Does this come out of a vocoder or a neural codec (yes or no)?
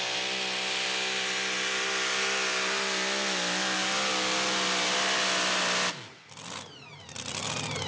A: no